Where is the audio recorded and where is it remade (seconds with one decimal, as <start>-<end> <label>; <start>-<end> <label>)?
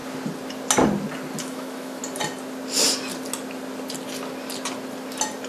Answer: 0.0-1.4 recorded; 1.4-2.0 remade; 2.0-5.5 recorded